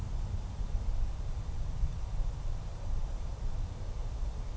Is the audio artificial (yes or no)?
no